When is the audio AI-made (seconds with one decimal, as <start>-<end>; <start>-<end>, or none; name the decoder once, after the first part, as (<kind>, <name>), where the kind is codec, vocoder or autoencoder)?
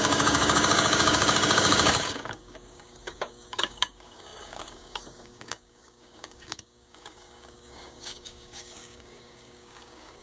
0.0-10.2 (codec, DAC)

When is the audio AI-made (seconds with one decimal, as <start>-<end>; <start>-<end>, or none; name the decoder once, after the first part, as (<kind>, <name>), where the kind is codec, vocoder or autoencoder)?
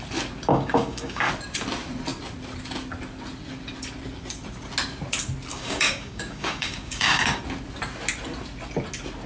0.5-1.3 (codec, DAC); 5.5-7.4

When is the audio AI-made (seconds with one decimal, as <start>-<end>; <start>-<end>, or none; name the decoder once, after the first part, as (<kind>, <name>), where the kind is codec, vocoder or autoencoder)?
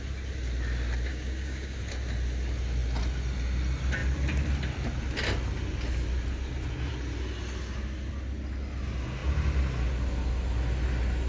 1.1-1.8 (codec, DAC)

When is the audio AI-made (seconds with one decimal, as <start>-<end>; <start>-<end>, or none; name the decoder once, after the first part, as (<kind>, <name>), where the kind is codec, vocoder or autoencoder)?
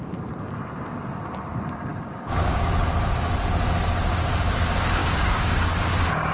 1.9-2.6 (codec, DAC); 5.0-6.3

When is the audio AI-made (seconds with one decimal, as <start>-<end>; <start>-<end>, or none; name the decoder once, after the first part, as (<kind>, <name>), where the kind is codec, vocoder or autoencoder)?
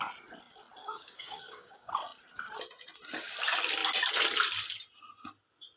0.8-1.9 (codec, DAC)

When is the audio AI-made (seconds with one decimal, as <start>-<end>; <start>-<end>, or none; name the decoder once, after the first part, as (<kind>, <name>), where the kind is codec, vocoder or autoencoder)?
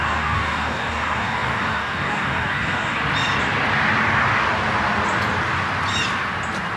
0.0-3.0 (codec, DAC)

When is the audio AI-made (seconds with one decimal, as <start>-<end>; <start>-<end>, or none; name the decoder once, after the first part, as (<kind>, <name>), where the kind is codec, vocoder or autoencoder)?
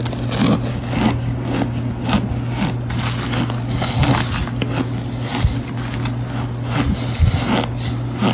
0.7-1.9 (codec, DAC)